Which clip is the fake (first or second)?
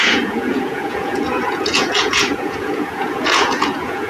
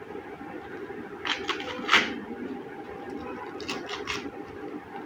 first